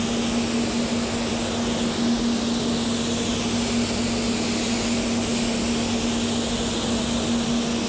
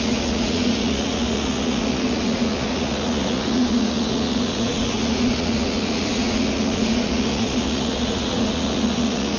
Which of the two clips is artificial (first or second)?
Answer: second